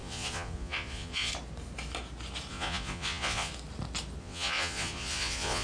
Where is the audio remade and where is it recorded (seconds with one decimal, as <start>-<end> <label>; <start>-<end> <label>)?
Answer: 0.0-1.3 remade; 1.3-2.5 recorded; 2.5-3.5 remade; 3.5-4.2 recorded; 4.2-5.6 remade